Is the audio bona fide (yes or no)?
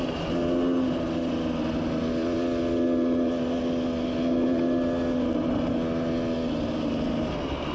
yes